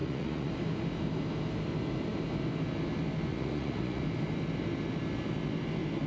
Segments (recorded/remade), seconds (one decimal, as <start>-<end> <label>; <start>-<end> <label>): 0.0-0.5 remade; 0.5-3.3 recorded; 3.3-4.0 remade; 4.0-6.1 recorded